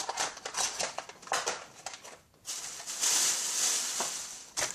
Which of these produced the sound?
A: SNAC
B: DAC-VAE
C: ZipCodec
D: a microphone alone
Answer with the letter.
D